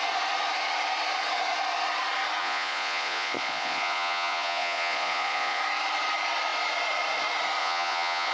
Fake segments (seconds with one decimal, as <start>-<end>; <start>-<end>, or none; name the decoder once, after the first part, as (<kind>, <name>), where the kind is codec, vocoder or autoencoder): 2.4-5.6 (vocoder, Vocos); 7.6-8.3